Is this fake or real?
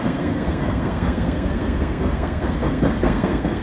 fake